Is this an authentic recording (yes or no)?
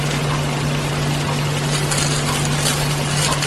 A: yes